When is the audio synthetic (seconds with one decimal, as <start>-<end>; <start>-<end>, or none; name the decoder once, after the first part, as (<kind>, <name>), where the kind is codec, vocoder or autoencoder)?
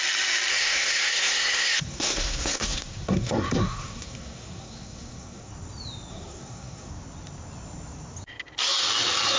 0.5-5.5 (codec, SNAC); 6.1-6.9